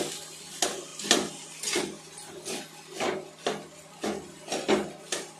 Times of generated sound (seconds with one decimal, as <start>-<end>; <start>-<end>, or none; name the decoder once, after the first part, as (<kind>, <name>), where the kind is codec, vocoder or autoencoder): none